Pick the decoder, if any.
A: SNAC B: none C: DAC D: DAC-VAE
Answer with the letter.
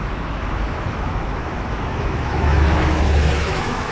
D